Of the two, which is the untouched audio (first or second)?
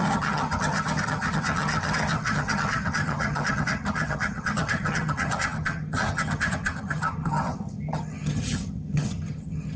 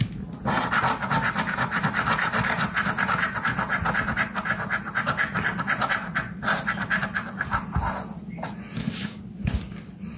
second